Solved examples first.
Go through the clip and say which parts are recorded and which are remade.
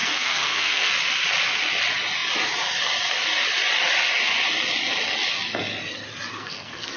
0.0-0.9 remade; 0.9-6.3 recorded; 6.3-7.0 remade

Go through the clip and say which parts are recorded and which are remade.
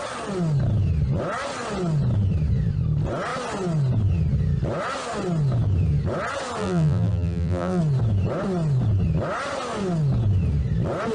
0.0-6.6 recorded; 6.6-7.8 remade; 7.8-11.1 recorded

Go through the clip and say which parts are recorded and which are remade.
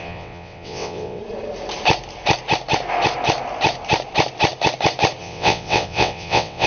0.0-1.2 remade; 1.2-5.2 recorded; 5.2-6.7 remade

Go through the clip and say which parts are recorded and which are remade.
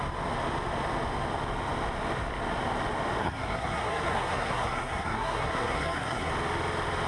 0.0-3.2 recorded; 3.2-6.3 remade; 6.3-7.1 recorded